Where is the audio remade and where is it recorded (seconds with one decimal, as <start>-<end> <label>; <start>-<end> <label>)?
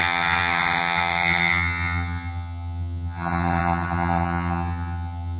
0.0-5.4 remade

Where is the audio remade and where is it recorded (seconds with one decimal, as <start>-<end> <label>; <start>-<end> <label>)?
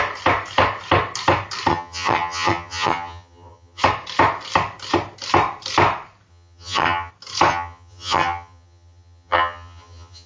0.0-1.7 recorded; 1.7-3.8 remade; 3.8-6.3 recorded; 6.3-7.1 remade; 7.1-7.5 recorded; 7.5-10.3 remade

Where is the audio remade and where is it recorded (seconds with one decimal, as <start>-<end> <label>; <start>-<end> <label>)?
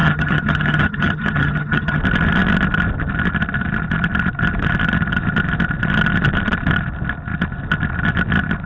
0.0-2.0 remade; 2.0-8.7 recorded